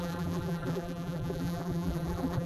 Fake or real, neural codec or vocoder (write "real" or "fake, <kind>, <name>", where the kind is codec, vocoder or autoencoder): fake, vocoder, BigVGAN v2